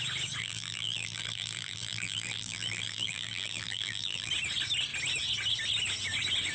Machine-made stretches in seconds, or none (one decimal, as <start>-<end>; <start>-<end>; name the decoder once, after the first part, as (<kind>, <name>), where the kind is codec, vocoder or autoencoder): 0.4-4.3 (vocoder, BigVGAN v2)